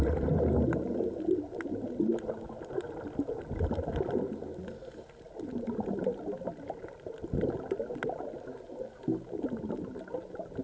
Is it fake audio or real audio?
real